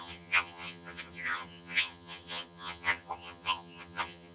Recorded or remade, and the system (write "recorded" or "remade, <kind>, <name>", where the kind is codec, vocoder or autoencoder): remade, vocoder, HiFi-GAN